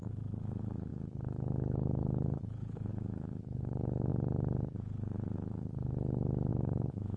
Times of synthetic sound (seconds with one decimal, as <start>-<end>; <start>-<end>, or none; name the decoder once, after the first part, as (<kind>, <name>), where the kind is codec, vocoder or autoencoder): 0.0-4.1 (autoencoder, DAC-VAE); 6.5-7.2